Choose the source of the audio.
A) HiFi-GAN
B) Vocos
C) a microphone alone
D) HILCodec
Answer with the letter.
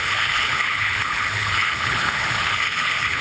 D